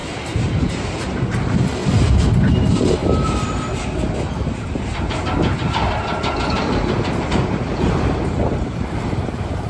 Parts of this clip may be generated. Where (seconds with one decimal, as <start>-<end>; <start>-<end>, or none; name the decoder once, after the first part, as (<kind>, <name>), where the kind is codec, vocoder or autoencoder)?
0.7-1.8 (vocoder, BigVGAN v2); 2.3-3.0; 7.5-9.7